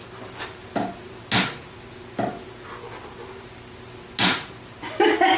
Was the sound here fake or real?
real